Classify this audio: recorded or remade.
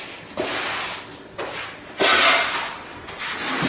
recorded